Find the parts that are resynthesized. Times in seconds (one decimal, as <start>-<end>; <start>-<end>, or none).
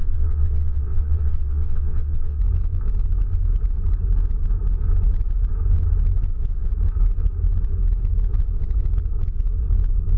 0.0-2.4